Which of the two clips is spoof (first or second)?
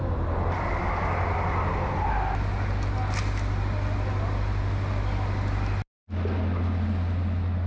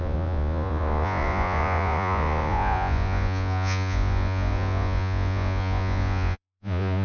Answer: second